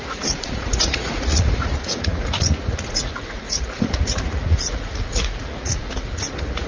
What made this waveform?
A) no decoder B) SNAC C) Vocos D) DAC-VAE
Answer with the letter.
C